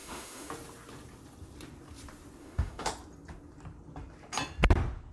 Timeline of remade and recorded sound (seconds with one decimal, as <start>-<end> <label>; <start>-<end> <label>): 0.0-0.5 remade; 0.5-2.4 recorded; 2.4-2.9 remade; 2.9-5.1 recorded